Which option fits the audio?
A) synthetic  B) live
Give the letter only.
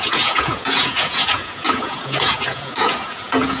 A